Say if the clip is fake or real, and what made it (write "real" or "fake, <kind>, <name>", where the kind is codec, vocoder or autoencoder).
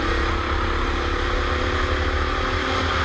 real